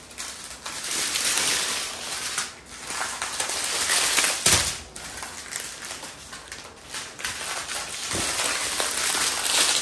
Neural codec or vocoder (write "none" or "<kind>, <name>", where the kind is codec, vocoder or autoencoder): none